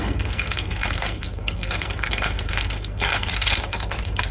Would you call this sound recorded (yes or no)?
no